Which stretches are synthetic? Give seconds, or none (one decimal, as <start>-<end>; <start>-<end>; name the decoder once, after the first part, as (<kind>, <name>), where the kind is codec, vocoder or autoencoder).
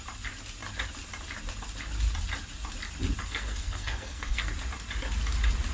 3.2-4.5 (codec, SNAC)